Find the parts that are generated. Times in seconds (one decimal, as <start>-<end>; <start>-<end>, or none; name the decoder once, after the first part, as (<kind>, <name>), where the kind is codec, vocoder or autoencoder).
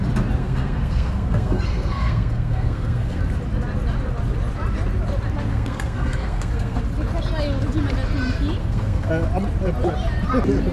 0.4-3.2 (codec, SNAC); 5.5-6.8; 8.6-9.1